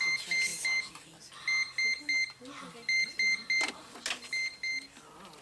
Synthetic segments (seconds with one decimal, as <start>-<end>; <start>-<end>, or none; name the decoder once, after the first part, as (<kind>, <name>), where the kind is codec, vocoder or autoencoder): none